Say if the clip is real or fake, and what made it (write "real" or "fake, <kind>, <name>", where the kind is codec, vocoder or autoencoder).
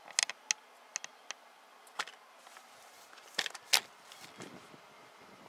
real